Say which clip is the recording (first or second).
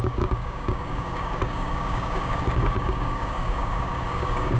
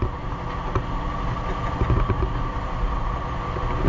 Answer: second